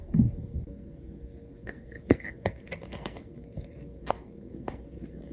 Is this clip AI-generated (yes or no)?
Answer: yes